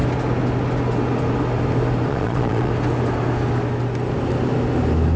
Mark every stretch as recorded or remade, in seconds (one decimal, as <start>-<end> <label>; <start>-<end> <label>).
0.0-2.1 recorded; 2.1-2.7 remade; 2.7-5.2 recorded